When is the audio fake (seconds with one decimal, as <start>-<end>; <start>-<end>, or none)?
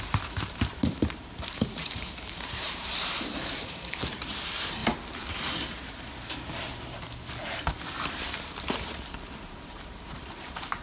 0.0-4.8; 9.4-10.8